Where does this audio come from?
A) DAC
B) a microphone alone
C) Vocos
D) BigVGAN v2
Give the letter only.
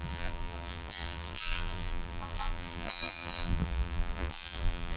D